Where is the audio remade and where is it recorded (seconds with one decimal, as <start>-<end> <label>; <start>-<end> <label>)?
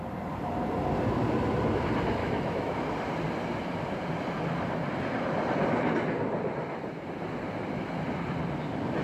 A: 0.0-2.2 recorded; 2.2-2.7 remade; 2.7-9.0 recorded